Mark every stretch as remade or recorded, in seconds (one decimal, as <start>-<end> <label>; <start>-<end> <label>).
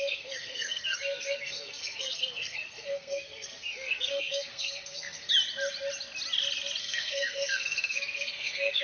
0.0-5.3 remade; 5.3-6.8 recorded; 6.8-8.8 remade